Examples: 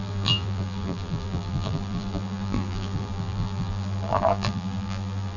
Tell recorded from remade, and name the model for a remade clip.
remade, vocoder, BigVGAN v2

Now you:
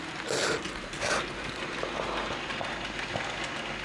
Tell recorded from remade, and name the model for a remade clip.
recorded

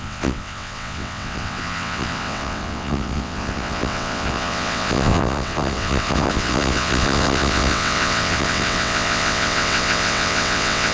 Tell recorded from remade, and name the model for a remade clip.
remade, vocoder, WaveNeXt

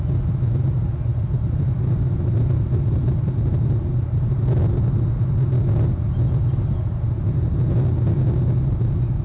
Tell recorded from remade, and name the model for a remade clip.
recorded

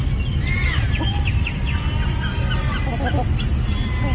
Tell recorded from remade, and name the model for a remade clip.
recorded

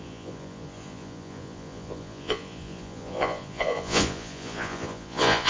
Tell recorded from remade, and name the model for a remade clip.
remade, vocoder, Vocos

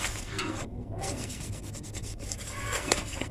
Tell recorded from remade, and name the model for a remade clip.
remade, codec, SNAC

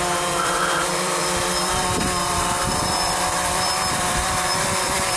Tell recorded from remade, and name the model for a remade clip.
remade, vocoder, BigVGAN v2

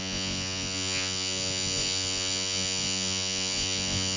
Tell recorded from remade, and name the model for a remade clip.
remade, vocoder, Vocos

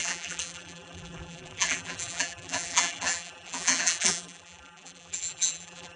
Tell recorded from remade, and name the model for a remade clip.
remade, vocoder, BigVGAN v2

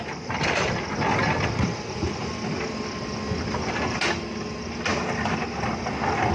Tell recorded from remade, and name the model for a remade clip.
recorded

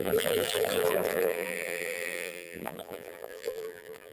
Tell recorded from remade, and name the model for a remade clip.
remade, vocoder, BigVGAN v2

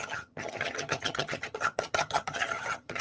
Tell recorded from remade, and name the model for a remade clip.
remade, vocoder, HiFi-GAN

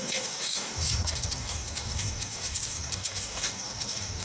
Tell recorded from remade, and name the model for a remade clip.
remade, codec, DAC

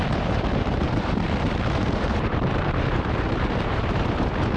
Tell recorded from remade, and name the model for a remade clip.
remade, vocoder, BigVGAN v2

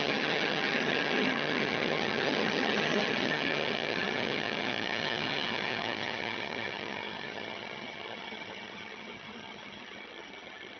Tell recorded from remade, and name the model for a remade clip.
remade, vocoder, HiFi-GAN